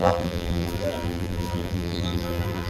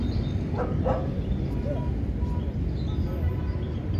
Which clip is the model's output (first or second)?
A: first